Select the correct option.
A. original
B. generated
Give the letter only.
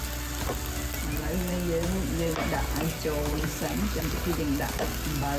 A